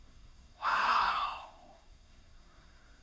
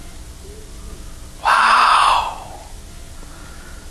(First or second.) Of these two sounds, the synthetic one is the first